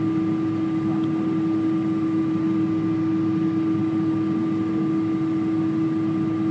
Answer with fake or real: real